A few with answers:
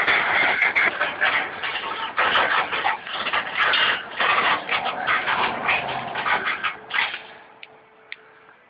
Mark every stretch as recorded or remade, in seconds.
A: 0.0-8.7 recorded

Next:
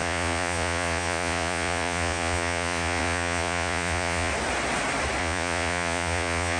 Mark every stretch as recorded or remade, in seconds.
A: 0.0-4.3 remade; 4.3-5.2 recorded; 5.2-6.6 remade

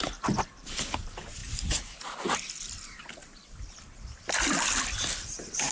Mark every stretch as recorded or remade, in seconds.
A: 0.0-5.7 recorded

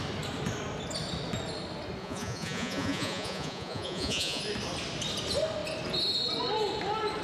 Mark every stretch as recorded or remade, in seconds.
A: 0.0-2.0 recorded; 2.0-4.4 remade; 4.4-7.2 recorded

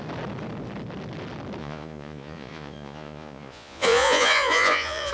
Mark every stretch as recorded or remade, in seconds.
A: 0.0-1.6 recorded; 1.6-5.1 remade

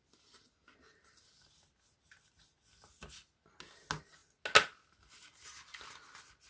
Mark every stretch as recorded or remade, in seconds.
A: 0.0-6.5 recorded

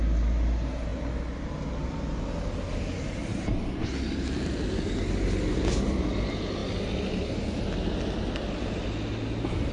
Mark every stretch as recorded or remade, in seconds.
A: 0.0-9.7 recorded